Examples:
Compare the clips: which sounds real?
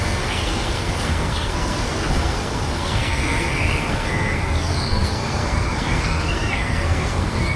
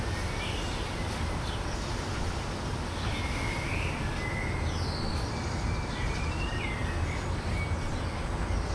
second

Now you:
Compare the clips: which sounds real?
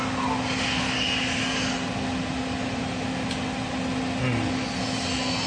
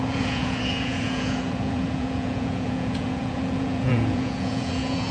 first